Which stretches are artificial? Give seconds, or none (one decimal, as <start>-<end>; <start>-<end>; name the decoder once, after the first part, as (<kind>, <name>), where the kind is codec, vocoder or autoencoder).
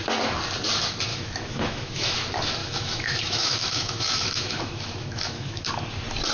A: 1.1-2.2 (autoencoder, DAC-VAE); 2.6-5.7